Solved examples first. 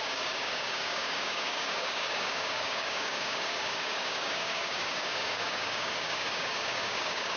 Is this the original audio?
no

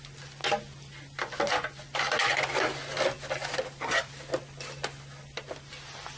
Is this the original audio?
yes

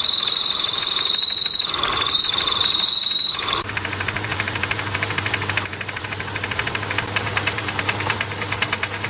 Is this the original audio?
no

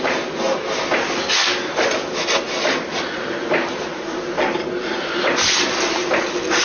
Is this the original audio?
yes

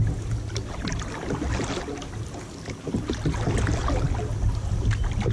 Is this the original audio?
yes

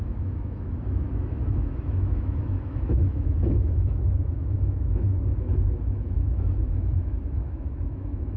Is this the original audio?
no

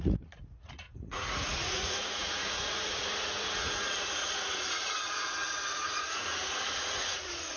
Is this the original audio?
no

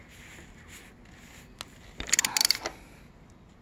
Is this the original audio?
yes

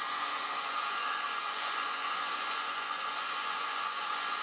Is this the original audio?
no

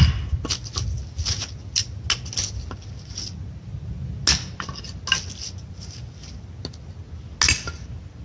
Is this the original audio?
yes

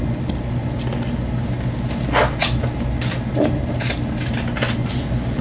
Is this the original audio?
yes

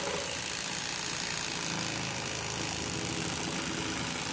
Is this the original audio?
yes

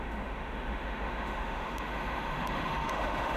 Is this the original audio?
no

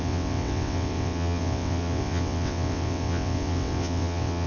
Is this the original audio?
no